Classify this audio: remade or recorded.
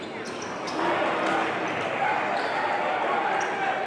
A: recorded